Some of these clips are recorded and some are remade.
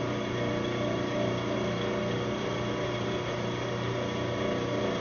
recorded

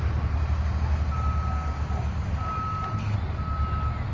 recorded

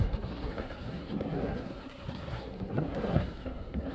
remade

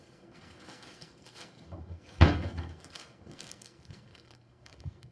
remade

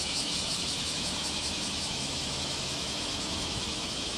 remade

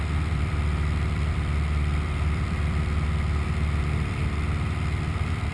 remade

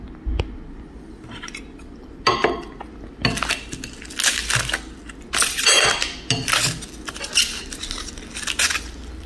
recorded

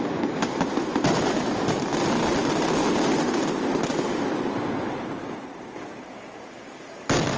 recorded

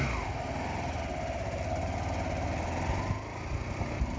recorded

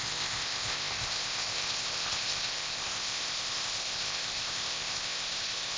remade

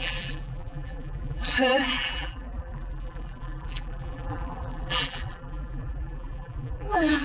remade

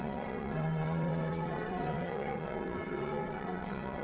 remade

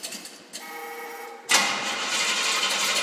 recorded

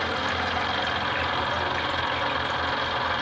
recorded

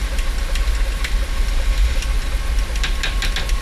recorded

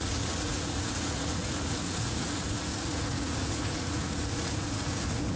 remade